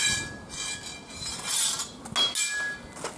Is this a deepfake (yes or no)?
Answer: no